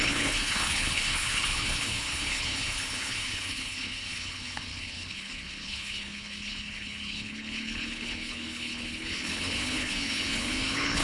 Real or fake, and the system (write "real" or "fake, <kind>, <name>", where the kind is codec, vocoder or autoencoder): fake, codec, HILCodec